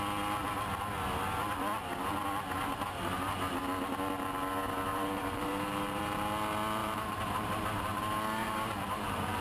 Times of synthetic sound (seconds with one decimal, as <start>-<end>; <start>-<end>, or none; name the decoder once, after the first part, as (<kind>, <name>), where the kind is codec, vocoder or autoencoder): 4.9-6.0 (vocoder, BigVGAN v2); 6.8-7.8; 8.4-9.4